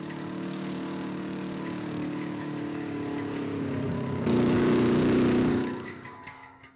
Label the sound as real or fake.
fake